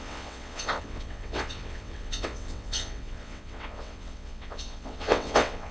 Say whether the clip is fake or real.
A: fake